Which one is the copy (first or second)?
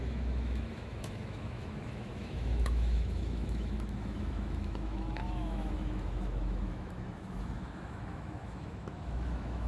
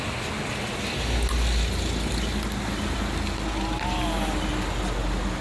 first